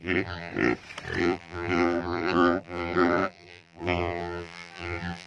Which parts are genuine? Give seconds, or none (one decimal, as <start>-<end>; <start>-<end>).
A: 0.5-1.2